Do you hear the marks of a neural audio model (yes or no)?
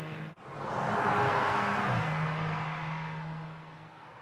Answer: yes